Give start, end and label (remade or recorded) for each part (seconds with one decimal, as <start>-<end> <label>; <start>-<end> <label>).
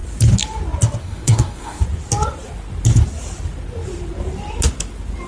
0.0-1.0 recorded; 1.0-1.8 remade; 1.8-5.3 recorded